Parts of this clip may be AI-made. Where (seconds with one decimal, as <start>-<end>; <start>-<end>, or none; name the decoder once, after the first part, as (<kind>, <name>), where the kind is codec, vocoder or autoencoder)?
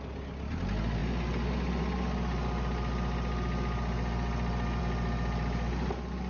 none